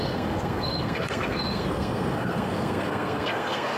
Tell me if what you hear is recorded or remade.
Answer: remade